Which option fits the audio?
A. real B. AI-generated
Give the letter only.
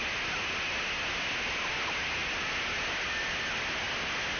A